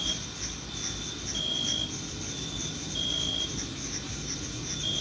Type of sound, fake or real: real